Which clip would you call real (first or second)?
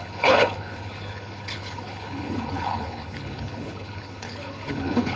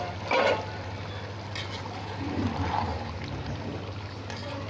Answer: second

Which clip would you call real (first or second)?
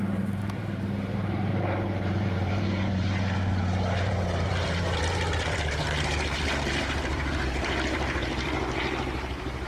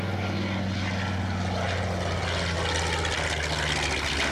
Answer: second